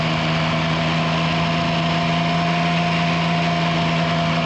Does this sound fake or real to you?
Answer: real